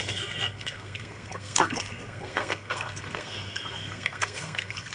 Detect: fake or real fake